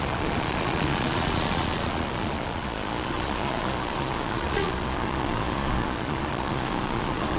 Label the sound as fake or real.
fake